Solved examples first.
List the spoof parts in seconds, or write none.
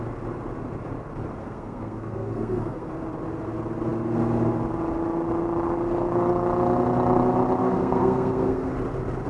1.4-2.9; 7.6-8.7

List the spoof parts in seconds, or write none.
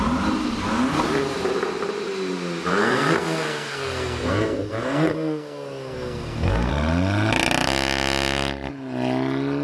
2.7-6.7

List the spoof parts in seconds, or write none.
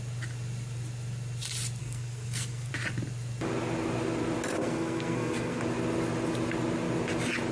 1.8-2.7; 4.6-5.6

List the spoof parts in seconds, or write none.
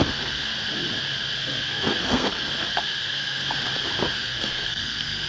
0.0-0.5; 1.4-3.4; 4.1-5.3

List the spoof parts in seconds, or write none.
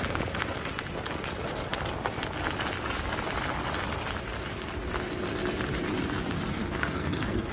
6.6-7.5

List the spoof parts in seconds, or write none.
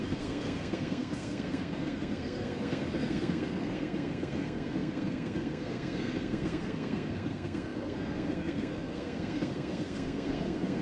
0.0-10.8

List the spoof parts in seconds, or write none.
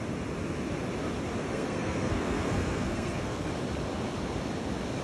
1.5-3.5